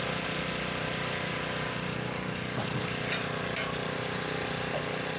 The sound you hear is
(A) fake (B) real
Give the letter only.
B